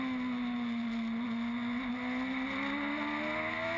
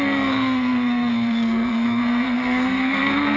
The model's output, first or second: second